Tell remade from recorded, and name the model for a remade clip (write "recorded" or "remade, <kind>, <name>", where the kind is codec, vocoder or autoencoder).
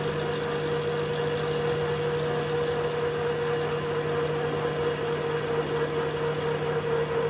recorded